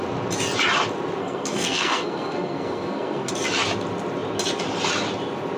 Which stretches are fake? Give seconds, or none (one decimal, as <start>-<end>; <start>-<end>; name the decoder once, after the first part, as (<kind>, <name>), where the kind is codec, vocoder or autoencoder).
1.2-3.3 (codec, SNAC)